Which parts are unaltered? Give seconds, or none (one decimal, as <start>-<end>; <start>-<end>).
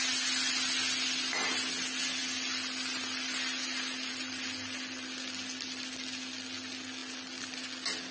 0.0-8.1